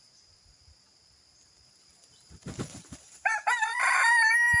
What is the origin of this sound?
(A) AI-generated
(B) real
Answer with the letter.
A